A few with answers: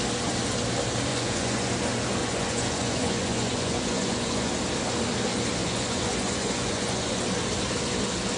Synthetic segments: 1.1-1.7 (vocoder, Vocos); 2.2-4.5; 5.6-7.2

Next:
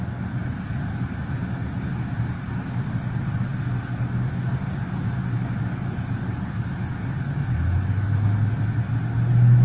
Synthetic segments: none

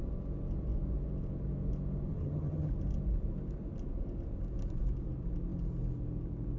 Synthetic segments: 2.1-2.7 (vocoder, HiFi-GAN)

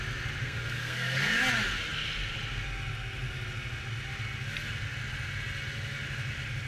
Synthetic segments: 0.4-1.4 (codec, SNAC)

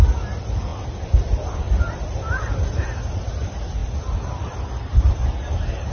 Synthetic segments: none